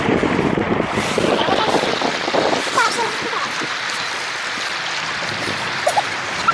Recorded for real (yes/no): yes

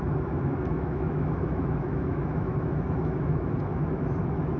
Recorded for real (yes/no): no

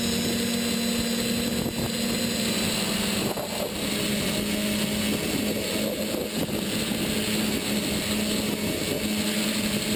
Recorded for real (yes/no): yes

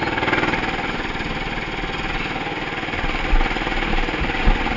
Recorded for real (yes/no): yes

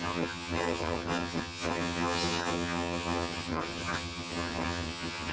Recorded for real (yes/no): no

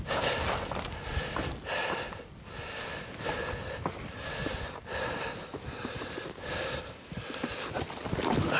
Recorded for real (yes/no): yes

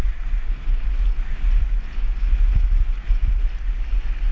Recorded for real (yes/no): yes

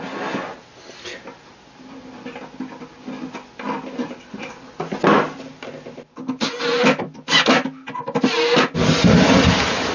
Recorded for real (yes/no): yes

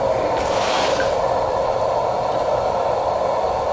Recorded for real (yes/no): yes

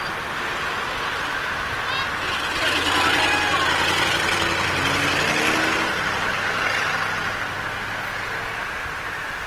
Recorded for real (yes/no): yes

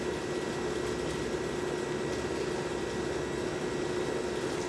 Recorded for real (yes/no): yes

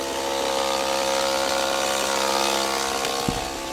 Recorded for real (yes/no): yes